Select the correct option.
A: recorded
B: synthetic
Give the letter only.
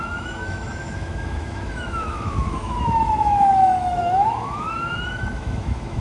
B